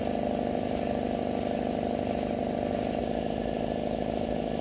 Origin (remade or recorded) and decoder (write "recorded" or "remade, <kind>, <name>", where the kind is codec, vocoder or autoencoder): recorded